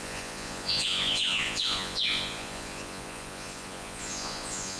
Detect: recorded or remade remade